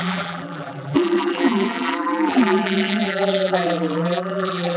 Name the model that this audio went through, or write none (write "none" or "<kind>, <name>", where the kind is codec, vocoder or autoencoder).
vocoder, BigVGAN v2